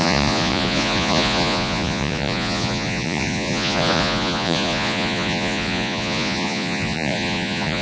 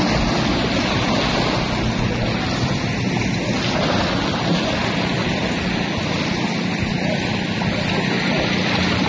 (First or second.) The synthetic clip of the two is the first